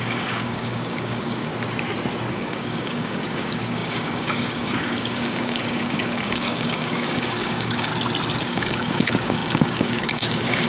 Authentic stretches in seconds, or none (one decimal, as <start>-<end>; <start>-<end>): 1.5-2.3; 7.9-8.4